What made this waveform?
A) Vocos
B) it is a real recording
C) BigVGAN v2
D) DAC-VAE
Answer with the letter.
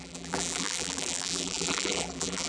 C